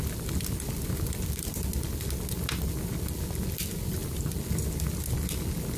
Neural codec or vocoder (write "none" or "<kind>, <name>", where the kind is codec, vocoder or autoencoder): none